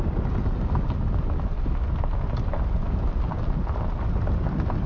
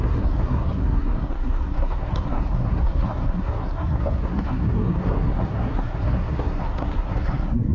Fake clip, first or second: second